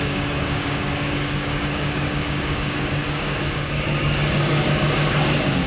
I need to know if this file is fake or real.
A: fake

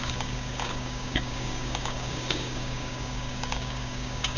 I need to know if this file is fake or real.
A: fake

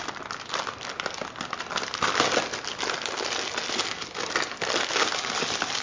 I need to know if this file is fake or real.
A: real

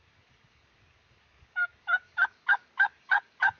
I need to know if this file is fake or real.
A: fake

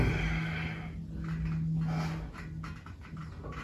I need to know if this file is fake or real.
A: real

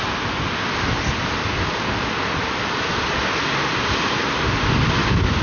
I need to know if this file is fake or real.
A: real